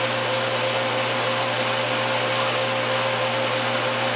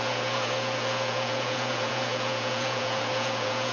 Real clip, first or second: first